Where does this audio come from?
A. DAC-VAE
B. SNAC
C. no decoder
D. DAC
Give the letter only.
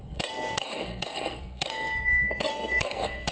B